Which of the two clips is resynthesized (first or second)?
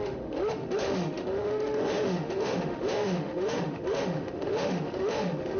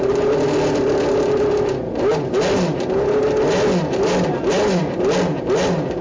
first